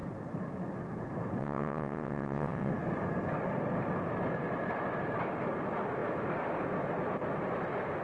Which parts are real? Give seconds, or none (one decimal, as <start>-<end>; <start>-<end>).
0.0-1.4; 2.7-8.0